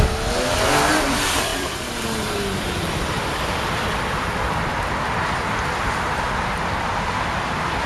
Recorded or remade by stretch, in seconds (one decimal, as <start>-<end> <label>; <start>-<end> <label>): 0.0-1.5 recorded; 1.5-6.2 remade; 6.2-7.9 recorded